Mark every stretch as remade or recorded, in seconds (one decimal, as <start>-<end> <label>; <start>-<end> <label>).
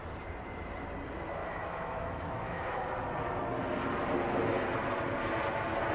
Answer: 0.0-1.4 recorded; 1.4-2.8 remade; 2.8-5.9 recorded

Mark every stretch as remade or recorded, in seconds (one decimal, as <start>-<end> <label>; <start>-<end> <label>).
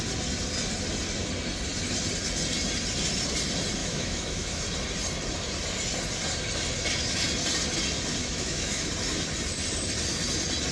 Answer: 0.0-3.8 recorded; 3.8-4.6 remade; 4.6-8.2 recorded; 8.2-8.9 remade; 8.9-10.7 recorded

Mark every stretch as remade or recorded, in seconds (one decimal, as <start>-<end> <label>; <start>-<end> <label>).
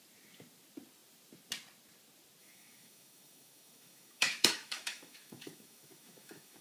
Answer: 0.0-2.4 recorded; 2.4-6.6 remade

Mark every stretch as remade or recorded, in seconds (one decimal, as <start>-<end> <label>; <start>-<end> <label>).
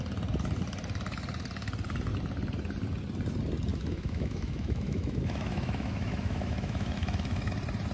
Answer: 0.0-3.7 recorded; 3.7-7.5 remade; 7.5-7.9 recorded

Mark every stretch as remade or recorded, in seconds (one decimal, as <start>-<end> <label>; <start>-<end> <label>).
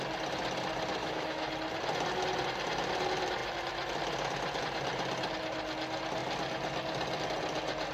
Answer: 0.0-1.0 recorded; 1.0-1.5 remade; 1.5-7.9 recorded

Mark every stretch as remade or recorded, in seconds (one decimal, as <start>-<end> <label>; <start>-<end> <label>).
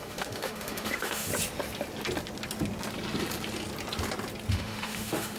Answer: 0.0-1.3 remade; 1.3-4.5 recorded; 4.5-5.4 remade